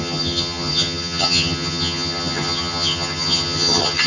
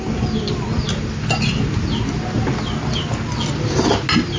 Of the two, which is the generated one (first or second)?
first